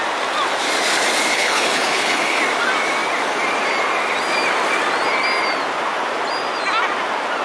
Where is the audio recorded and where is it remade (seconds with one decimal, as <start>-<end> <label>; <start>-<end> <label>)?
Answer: 0.0-1.3 recorded; 1.3-2.4 remade; 2.4-7.4 recorded